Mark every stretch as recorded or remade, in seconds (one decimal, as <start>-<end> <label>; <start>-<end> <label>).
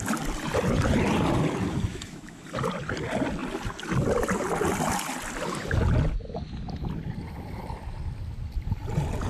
0.0-1.9 recorded; 1.9-2.4 remade; 2.4-9.3 recorded